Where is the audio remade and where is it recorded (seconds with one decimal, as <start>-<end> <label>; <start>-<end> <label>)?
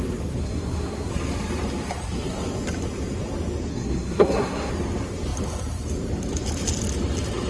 0.0-0.4 recorded; 0.4-1.1 remade; 1.1-3.7 recorded; 3.7-4.7 remade; 4.7-7.5 recorded